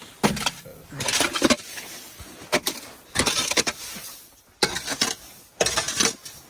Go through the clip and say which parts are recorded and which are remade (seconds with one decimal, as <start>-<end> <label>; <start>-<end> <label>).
0.0-0.7 recorded; 0.7-3.5 remade; 3.5-6.5 recorded